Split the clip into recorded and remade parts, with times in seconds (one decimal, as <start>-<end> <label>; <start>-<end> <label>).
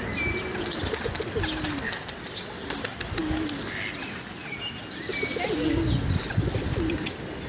0.0-7.5 recorded